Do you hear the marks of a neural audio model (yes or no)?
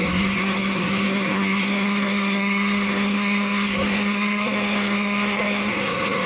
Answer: yes